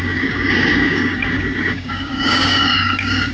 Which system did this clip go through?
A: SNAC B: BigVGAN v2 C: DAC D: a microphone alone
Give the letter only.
C